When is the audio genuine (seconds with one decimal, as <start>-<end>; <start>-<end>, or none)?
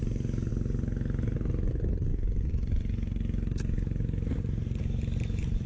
0.0-5.7